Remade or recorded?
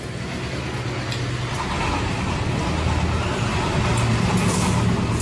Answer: recorded